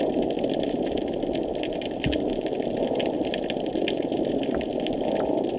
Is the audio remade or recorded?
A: recorded